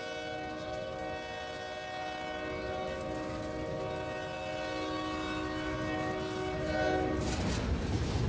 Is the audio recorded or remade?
recorded